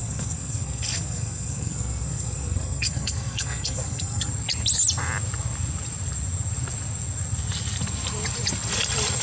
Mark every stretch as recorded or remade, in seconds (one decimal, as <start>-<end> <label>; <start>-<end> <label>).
0.0-4.3 remade; 4.3-9.2 recorded